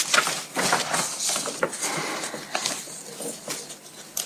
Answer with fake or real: real